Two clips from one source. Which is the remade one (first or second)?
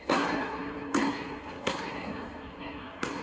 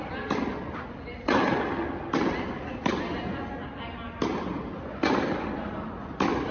first